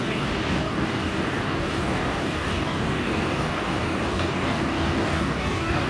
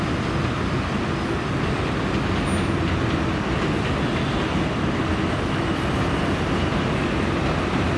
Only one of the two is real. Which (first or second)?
second